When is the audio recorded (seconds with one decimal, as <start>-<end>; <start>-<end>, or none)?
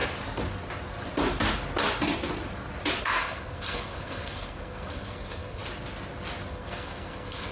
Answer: 0.0-3.0; 5.6-6.5